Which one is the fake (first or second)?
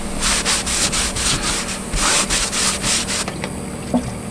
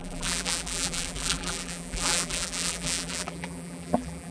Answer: second